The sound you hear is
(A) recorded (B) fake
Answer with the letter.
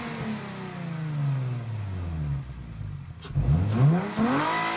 A